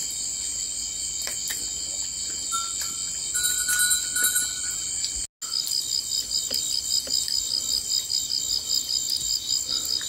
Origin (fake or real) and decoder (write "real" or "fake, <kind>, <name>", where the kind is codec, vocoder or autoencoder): real